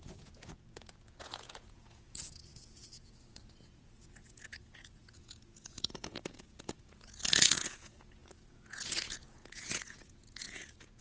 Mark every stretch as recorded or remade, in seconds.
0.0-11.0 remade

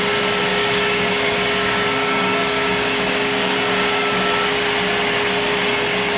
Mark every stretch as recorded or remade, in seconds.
0.0-0.5 recorded; 0.5-4.2 remade; 4.2-6.2 recorded

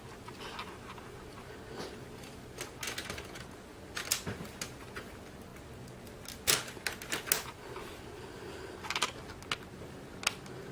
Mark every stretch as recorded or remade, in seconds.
0.0-10.7 recorded

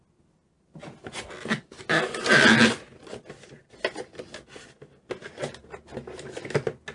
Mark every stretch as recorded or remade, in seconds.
0.0-6.9 recorded

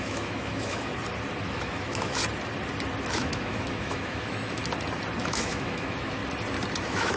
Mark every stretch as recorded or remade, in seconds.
0.0-0.9 remade; 0.9-1.4 recorded; 1.4-2.2 remade; 2.2-3.1 recorded; 3.1-4.6 remade; 4.6-5.2 recorded; 5.2-6.2 remade; 6.2-6.8 recorded; 6.8-7.2 remade

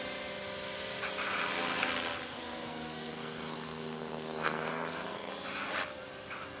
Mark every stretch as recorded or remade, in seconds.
0.0-2.3 recorded; 2.3-5.3 remade; 5.3-6.6 recorded

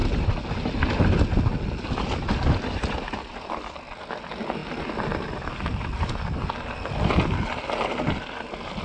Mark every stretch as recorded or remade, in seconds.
0.0-8.8 recorded

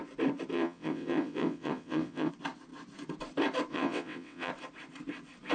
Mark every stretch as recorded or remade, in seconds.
0.0-0.5 recorded; 0.5-2.3 remade; 2.3-3.7 recorded; 3.7-4.5 remade; 4.5-5.5 recorded